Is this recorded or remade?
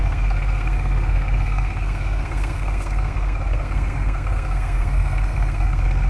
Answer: remade